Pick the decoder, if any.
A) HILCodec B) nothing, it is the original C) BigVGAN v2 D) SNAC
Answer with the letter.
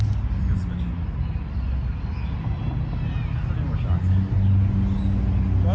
B